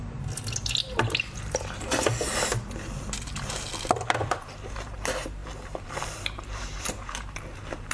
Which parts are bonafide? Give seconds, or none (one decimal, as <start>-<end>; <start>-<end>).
0.0-4.2

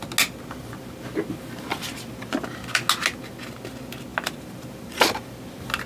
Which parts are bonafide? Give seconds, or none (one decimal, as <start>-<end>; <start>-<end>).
0.0-5.9

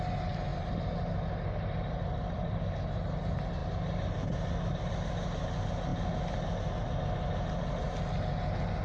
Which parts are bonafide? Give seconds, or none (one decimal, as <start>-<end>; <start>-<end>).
0.0-0.5; 2.6-8.8

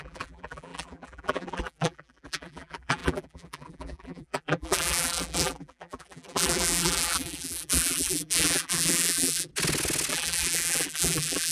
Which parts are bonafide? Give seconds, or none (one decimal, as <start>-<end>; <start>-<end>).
9.5-10.1

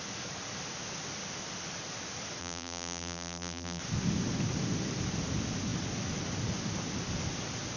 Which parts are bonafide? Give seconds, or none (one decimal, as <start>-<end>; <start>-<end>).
0.0-2.4; 3.8-7.8

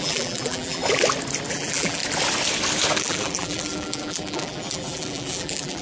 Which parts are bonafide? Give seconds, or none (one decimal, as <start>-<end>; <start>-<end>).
0.8-1.5; 2.0-3.0

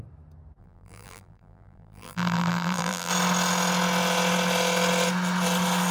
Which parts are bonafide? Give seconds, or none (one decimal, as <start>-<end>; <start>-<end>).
0.0-0.6; 3.1-5.9

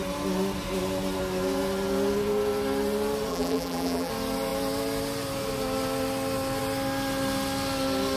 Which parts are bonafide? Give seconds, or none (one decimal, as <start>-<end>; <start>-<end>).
0.0-3.3; 4.1-8.2